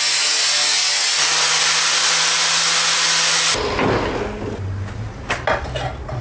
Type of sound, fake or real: real